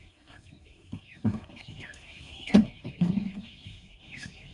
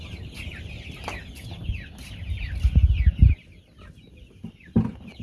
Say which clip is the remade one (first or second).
first